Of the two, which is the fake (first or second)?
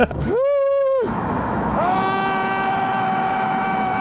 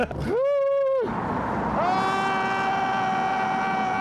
first